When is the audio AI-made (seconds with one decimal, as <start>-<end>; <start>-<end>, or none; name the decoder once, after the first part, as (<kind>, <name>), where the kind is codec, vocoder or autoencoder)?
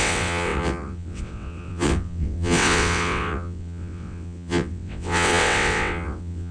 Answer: 0.0-6.5 (vocoder, WaveNeXt)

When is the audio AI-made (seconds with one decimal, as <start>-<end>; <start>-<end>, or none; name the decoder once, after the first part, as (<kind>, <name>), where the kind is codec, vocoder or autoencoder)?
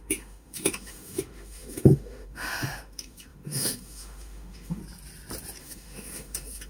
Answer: 0.0-4.8 (autoencoder, DAC-VAE); 5.6-6.7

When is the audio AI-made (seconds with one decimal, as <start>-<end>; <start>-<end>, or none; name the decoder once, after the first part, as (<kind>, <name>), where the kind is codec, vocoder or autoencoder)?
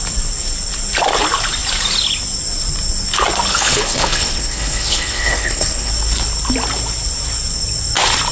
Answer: 3.5-5.9 (codec, HILCodec)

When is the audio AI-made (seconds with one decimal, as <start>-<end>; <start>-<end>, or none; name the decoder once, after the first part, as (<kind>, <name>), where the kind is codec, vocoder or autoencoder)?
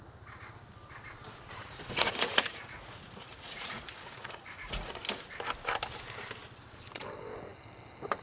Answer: 1.6-4.9 (vocoder, Vocos)